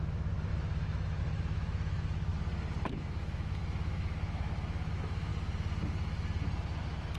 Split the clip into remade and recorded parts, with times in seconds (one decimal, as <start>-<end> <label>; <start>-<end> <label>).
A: 0.0-2.3 remade; 2.3-2.9 recorded; 2.9-5.3 remade; 5.3-6.8 recorded; 6.8-7.2 remade

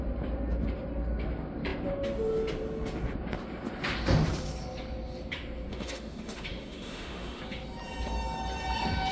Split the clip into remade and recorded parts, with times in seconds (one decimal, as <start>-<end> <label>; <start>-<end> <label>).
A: 0.0-5.7 recorded; 5.7-7.4 remade; 7.4-9.1 recorded

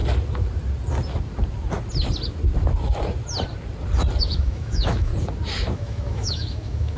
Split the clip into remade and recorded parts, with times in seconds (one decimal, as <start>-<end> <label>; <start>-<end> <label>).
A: 0.0-4.2 recorded; 4.2-5.1 remade; 5.1-5.7 recorded; 5.7-7.0 remade

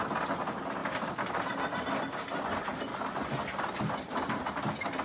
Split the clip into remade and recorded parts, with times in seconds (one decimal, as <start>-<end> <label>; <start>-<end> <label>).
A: 0.0-5.0 recorded

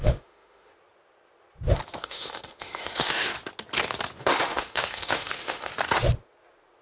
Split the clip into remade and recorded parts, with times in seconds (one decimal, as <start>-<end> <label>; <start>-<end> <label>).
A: 0.0-0.7 remade; 0.7-2.0 recorded; 2.0-3.3 remade; 3.3-4.2 recorded; 4.2-5.7 remade; 5.7-6.8 recorded

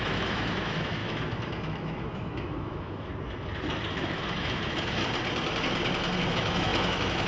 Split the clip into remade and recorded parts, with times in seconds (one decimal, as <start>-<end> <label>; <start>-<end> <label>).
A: 0.0-3.1 remade; 3.1-3.9 recorded; 3.9-5.0 remade; 5.0-6.3 recorded; 6.3-7.3 remade

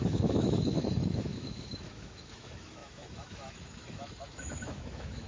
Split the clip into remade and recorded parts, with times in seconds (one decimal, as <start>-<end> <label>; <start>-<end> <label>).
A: 0.0-5.3 remade